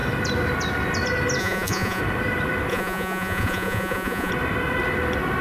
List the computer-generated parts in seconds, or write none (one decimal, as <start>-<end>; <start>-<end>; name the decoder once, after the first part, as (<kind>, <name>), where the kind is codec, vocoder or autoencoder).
1.4-2.0 (vocoder, Vocos); 2.7-4.3